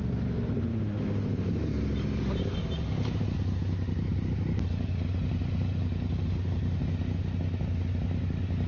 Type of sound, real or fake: real